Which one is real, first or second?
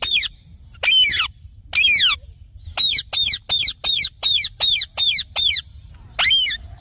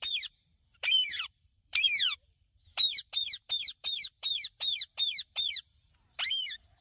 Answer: first